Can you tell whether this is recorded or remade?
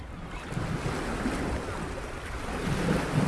recorded